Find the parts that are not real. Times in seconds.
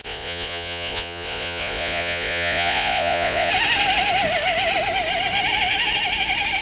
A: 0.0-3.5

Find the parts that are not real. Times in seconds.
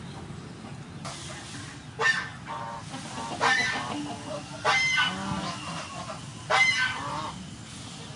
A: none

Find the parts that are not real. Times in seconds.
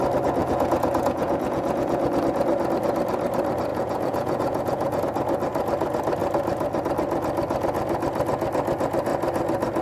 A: 0.4-2.2; 3.7-5.0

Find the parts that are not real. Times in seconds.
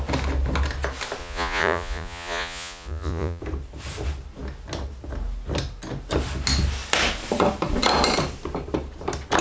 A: 1.2-3.4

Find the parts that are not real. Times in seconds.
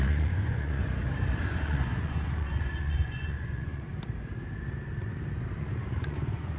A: 0.0-0.8; 1.4-3.9; 5.6-6.6